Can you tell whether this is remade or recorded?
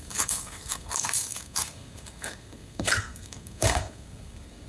remade